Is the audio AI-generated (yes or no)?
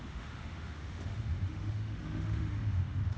yes